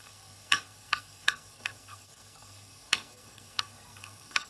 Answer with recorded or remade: remade